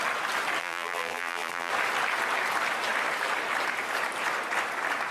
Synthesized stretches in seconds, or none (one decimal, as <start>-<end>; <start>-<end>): 0.6-1.7

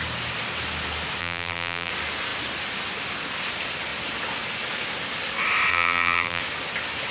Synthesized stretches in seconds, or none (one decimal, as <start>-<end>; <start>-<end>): 1.2-1.9; 5.7-6.4

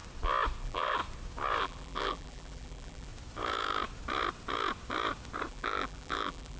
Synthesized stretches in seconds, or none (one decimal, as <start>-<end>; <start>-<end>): 0.6-1.0; 1.6-3.1; 5.5-6.6